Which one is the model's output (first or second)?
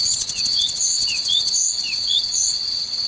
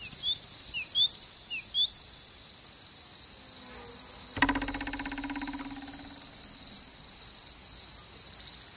first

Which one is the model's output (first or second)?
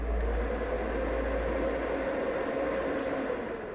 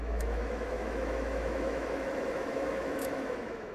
second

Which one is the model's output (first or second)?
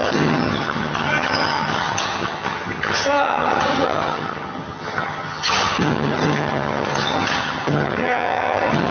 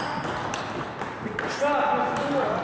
first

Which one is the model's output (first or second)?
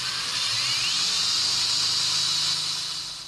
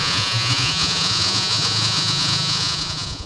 second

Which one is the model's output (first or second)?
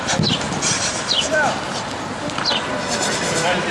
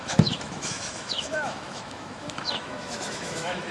second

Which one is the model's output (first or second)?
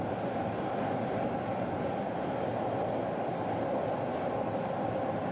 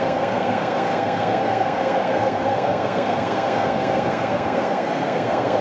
second